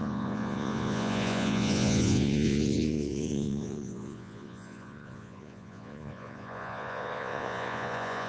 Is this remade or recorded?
remade